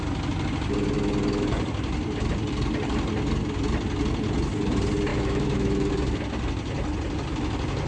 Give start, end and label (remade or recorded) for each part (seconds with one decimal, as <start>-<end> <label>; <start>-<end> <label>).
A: 0.0-5.1 recorded; 5.1-5.9 remade; 5.9-7.9 recorded